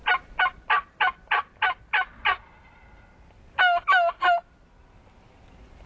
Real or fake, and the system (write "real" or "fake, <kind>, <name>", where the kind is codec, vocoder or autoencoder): real